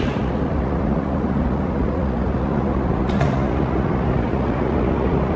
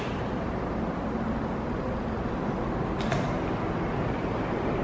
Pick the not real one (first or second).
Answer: first